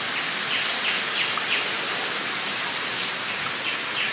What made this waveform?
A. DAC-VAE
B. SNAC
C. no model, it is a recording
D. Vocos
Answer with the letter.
C